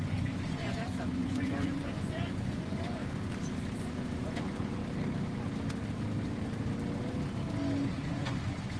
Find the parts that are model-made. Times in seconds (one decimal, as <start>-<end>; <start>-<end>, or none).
0.0-3.0; 3.8-4.8; 8.1-8.8